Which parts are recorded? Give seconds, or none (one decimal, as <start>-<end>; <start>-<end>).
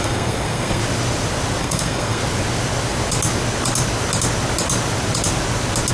0.8-1.6; 2.2-5.9